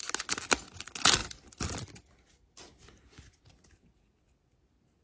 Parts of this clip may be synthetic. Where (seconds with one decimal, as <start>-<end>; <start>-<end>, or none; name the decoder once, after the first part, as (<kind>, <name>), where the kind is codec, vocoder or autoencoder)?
none